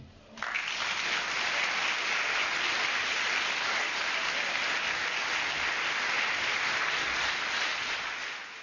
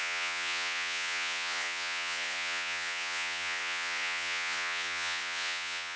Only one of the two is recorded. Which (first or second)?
first